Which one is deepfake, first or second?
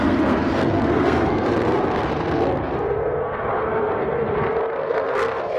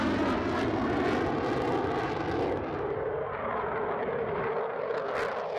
first